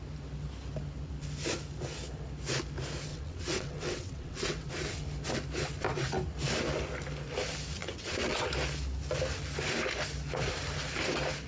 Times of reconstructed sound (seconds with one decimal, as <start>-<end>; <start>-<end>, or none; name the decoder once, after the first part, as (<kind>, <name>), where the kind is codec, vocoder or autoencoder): 3.1-4.7 (vocoder, WaveNeXt); 7.8-8.5